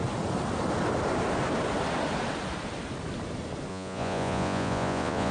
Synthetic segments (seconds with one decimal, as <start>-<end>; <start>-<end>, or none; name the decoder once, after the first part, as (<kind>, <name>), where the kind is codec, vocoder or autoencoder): 3.7-5.3 (vocoder, Vocos)